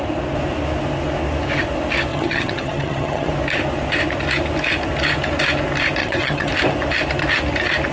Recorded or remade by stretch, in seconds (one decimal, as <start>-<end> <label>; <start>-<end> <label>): 0.0-2.1 recorded; 2.1-3.3 remade; 3.3-6.0 recorded; 6.0-6.5 remade; 6.5-7.9 recorded

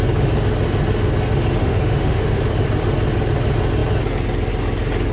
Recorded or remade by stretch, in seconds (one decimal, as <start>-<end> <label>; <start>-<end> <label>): 0.0-1.6 recorded; 1.6-2.4 remade; 2.4-5.1 recorded

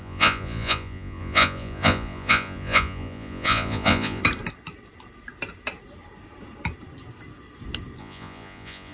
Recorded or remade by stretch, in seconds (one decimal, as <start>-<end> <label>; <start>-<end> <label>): 0.0-4.2 remade; 4.2-8.0 recorded; 8.0-8.9 remade

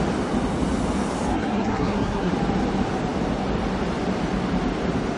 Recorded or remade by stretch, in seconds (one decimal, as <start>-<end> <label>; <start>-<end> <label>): 0.0-1.3 recorded; 1.3-2.3 remade; 2.3-5.2 recorded

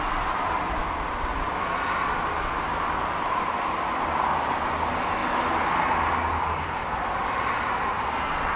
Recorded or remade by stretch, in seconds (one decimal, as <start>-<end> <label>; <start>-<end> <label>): 0.0-8.6 recorded

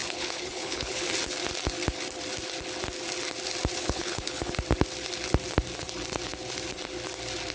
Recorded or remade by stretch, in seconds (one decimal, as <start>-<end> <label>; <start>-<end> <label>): 0.0-1.1 remade; 1.1-3.8 recorded; 3.8-4.5 remade; 4.5-7.5 recorded

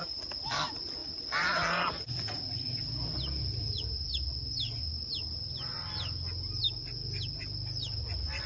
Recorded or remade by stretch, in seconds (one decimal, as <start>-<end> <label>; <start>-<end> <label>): 0.0-8.5 recorded

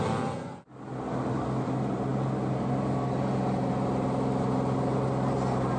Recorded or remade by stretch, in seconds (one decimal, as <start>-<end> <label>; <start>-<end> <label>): 0.0-5.8 recorded